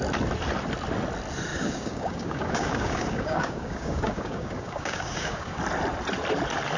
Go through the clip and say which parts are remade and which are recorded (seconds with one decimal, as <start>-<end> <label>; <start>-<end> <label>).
0.0-1.5 recorded; 1.5-5.6 remade; 5.6-6.8 recorded